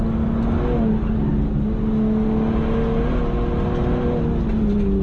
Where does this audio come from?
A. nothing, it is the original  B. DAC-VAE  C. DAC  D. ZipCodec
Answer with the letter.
A